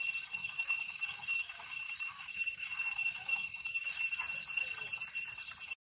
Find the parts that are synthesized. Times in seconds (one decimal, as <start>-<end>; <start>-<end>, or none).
0.4-4.0